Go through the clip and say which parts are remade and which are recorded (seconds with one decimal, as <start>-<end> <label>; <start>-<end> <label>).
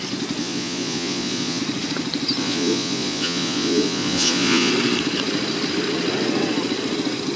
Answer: 0.0-0.4 recorded; 0.4-1.6 remade; 1.6-2.4 recorded; 2.4-4.7 remade; 4.7-7.4 recorded